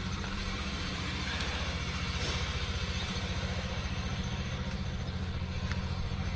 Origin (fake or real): fake